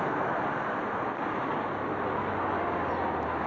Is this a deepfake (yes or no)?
no